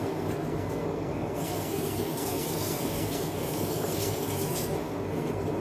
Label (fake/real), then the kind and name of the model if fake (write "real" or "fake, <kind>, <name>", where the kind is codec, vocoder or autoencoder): fake, codec, SNAC